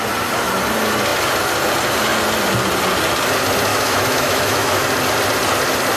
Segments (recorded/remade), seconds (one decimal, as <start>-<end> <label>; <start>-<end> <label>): 0.0-3.7 recorded; 3.7-4.8 remade; 4.8-6.0 recorded